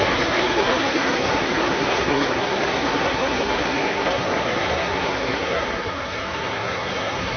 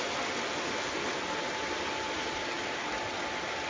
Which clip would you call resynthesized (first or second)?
first